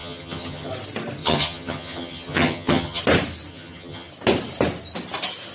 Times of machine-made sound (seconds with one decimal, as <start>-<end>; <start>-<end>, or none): 0.0-0.7; 1.2-3.0; 3.5-4.1